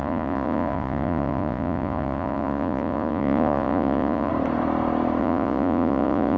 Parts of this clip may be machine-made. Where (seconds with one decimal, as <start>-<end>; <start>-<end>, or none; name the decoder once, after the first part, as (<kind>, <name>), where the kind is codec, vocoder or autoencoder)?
0.0-4.3 (vocoder, Vocos); 5.2-6.4

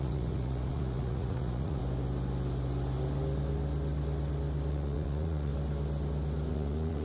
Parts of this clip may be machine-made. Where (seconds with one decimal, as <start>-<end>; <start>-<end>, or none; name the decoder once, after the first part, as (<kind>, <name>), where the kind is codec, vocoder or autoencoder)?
0.0-1.8 (vocoder, Vocos); 4.7-5.5; 6.5-7.0

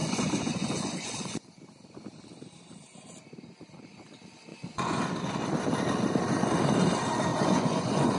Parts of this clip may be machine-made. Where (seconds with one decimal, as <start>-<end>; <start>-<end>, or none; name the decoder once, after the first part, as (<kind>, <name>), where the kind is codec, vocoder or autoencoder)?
0.0-1.5 (vocoder, Vocos); 4.5-5.0; 7.3-8.2